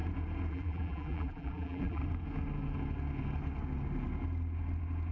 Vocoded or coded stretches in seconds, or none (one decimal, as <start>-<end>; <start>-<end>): 0.5-2.0